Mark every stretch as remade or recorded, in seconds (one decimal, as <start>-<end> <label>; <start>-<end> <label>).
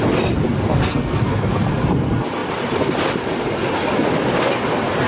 0.0-0.7 recorded; 0.7-1.7 remade; 1.7-5.1 recorded